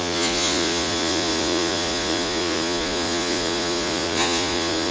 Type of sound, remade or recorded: remade